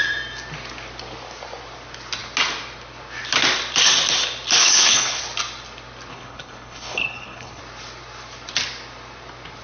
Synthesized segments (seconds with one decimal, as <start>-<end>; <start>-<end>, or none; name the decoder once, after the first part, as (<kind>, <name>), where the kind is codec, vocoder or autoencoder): 4.6-5.2 (codec, HILCodec); 6.1-7.6